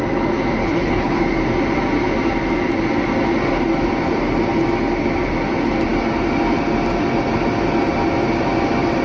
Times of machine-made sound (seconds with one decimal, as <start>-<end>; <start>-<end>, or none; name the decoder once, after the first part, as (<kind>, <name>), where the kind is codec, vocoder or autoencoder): 0.6-1.2 (codec, HILCodec)